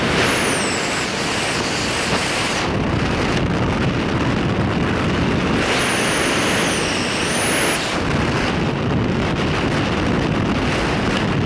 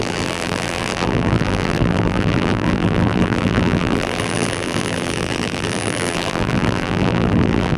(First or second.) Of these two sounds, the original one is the first